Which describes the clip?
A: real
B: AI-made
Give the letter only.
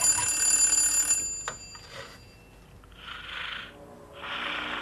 A